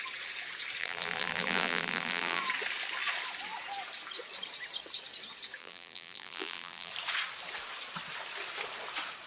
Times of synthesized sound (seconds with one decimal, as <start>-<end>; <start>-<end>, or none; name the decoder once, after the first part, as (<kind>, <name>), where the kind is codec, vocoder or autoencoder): 0.8-2.4 (vocoder, BigVGAN v2); 5.6-6.9